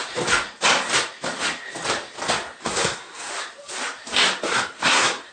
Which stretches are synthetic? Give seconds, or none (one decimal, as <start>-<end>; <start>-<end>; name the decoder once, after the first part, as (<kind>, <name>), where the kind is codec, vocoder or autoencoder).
2.6-3.3 (codec, SNAC); 4.5-5.3